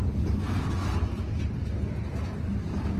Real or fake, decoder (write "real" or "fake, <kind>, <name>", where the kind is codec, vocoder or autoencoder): real